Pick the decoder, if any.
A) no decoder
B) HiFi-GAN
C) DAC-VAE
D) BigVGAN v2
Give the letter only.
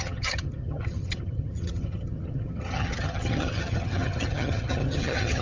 B